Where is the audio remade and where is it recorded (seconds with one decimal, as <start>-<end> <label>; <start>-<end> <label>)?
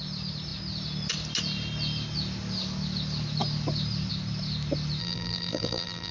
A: 0.0-5.0 recorded; 5.0-6.1 remade